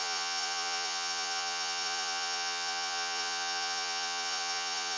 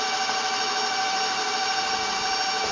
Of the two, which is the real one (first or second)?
second